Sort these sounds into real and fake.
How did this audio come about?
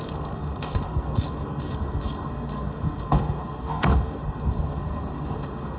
fake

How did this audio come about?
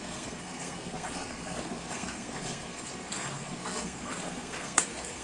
fake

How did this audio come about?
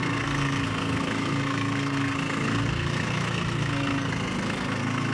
fake